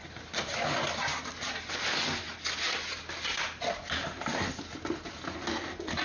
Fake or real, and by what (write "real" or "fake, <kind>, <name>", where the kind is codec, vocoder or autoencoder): real